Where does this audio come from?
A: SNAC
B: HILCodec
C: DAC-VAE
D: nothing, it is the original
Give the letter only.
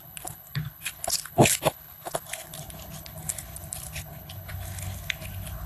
B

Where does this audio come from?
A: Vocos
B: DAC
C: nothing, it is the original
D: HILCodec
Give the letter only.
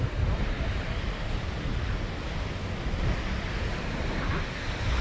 C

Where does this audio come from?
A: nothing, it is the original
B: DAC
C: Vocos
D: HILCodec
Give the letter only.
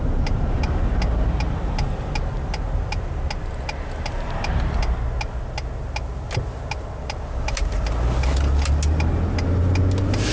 A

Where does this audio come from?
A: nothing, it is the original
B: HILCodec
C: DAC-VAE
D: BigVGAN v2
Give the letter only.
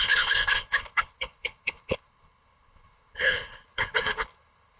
B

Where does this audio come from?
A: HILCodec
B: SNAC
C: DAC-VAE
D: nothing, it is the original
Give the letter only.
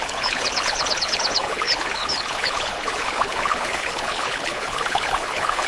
A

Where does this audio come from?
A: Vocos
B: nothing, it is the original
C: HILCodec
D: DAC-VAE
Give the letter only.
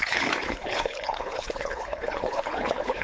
C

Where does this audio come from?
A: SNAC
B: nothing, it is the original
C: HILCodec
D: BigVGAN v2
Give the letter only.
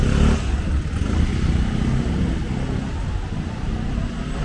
B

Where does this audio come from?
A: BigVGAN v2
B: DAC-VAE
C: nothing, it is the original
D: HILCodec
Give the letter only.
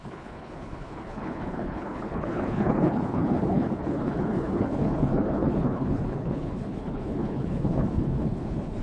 D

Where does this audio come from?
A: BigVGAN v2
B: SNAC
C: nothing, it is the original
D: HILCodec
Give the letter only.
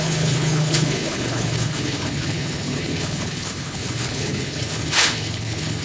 D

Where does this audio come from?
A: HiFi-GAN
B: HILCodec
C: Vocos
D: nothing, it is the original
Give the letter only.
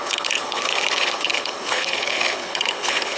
B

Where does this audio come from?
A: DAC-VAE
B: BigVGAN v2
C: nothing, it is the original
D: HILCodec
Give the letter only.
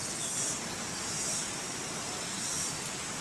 C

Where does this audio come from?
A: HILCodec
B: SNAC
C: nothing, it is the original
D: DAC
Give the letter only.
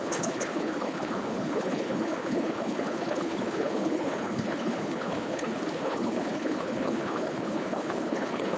A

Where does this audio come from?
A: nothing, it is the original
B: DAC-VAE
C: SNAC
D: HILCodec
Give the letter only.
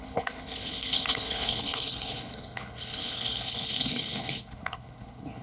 D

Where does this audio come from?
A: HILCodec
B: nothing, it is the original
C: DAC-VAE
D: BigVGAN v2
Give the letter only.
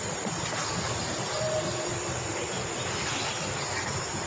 B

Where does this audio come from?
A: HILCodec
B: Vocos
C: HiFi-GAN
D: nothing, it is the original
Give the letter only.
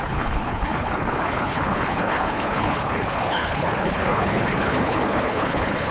A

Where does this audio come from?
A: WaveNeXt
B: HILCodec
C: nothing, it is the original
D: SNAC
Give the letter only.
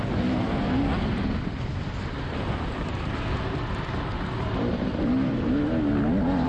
C